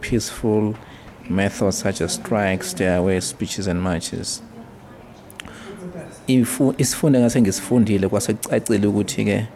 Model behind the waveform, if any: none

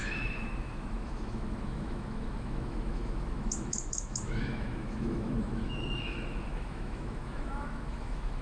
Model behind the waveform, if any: autoencoder, DAC-VAE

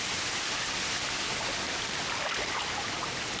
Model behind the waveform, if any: none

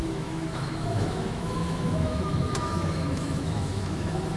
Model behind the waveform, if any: autoencoder, DAC-VAE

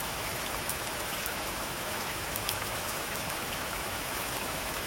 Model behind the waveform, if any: autoencoder, DAC-VAE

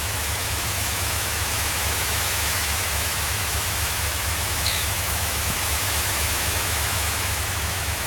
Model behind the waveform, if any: autoencoder, DAC-VAE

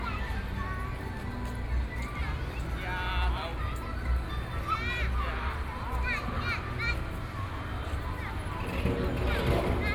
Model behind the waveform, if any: none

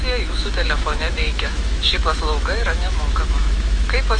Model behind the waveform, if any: autoencoder, DAC-VAE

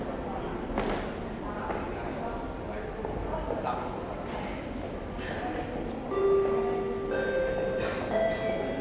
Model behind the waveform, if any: none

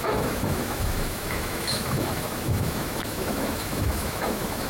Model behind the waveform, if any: autoencoder, DAC-VAE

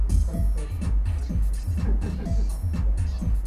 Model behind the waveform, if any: none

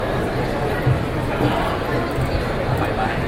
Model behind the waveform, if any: none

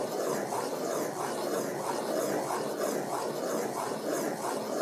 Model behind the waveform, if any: none